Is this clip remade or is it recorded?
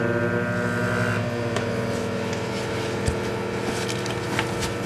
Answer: recorded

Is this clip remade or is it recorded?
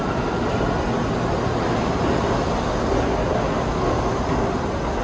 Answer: recorded